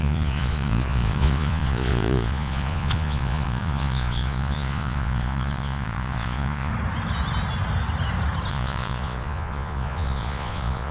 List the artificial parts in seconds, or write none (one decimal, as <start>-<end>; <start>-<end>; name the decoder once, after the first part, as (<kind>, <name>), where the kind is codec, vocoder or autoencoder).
0.0-6.7 (vocoder, Vocos); 8.5-10.9